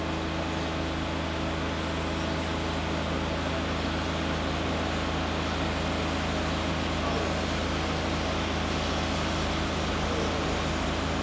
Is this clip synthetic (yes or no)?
no